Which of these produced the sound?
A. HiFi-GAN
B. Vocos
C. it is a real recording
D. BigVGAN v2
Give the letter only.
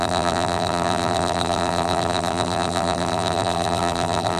D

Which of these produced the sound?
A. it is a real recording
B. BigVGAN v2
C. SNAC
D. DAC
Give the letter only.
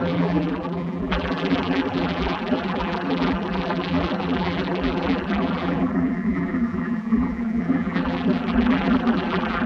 B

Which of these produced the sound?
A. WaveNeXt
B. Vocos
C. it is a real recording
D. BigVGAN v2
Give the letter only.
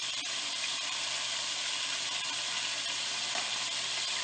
D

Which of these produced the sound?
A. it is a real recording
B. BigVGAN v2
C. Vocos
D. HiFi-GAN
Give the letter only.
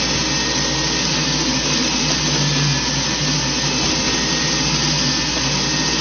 A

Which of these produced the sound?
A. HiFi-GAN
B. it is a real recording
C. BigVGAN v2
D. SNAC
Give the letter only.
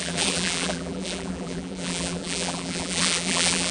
C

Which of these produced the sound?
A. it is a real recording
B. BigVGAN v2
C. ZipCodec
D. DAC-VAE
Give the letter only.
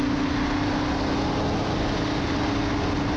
A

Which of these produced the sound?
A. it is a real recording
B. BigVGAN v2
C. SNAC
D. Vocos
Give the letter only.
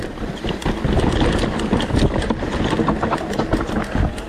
A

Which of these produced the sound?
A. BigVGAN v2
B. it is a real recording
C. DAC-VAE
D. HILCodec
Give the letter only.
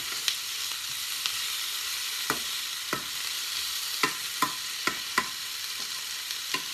A